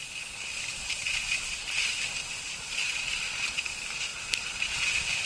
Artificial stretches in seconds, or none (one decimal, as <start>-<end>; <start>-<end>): none